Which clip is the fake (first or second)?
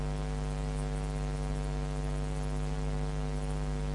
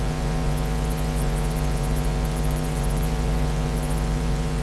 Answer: second